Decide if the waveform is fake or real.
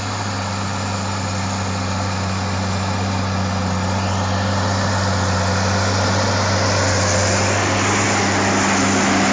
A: real